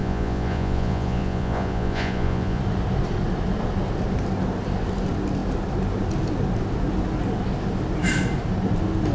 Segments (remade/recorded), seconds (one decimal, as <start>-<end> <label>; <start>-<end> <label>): 0.0-2.6 remade; 2.6-9.1 recorded